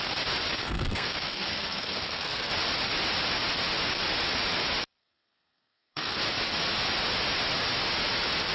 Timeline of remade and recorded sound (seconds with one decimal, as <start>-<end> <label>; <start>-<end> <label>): 0.0-0.6 recorded; 0.6-2.5 remade; 2.5-5.0 recorded; 5.0-6.2 remade; 6.2-8.5 recorded